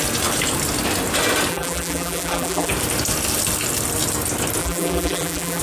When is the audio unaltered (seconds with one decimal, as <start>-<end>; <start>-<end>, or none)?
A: 0.0-1.5; 2.7-4.6